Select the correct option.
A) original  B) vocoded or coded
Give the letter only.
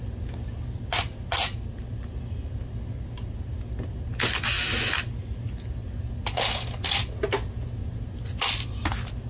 A